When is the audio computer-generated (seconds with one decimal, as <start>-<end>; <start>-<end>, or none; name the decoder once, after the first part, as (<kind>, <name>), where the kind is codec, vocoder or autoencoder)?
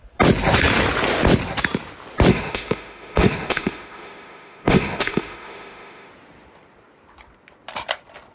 2.3-6.1 (autoencoder, DAC-VAE)